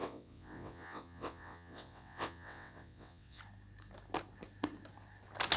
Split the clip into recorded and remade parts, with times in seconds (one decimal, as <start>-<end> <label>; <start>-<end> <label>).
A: 0.0-3.4 remade; 3.4-5.6 recorded